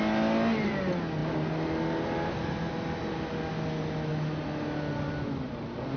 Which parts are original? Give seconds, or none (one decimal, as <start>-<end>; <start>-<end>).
0.0-6.0